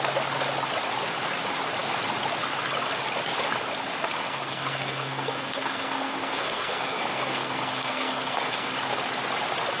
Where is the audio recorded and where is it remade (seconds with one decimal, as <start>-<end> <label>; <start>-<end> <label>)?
0.0-4.2 recorded; 4.2-8.7 remade; 8.7-9.8 recorded